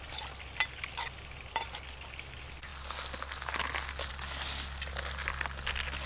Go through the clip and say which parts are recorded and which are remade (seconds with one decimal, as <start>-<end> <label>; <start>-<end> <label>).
0.0-6.1 recorded